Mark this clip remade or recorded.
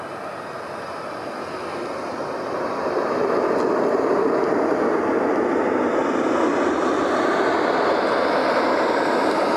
recorded